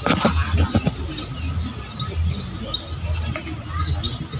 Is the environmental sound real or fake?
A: real